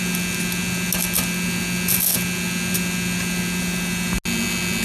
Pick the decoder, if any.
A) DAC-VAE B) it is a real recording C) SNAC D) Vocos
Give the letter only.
B